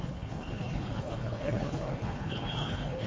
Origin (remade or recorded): remade